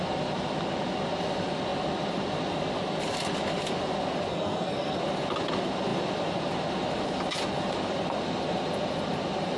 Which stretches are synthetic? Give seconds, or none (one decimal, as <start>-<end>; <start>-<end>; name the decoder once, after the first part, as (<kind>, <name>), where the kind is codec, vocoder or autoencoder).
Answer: 4.3-5.0 (codec, SNAC)